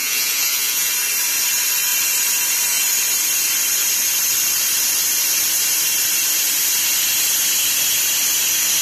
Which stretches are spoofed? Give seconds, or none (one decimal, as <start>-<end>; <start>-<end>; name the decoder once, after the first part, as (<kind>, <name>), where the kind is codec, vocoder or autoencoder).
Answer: 0.0-0.9 (vocoder, Vocos)